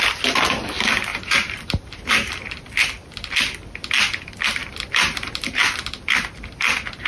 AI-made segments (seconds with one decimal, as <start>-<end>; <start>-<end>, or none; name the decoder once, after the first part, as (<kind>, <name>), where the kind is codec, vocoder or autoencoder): 1.1-2.1 (vocoder, BigVGAN v2); 4.6-5.6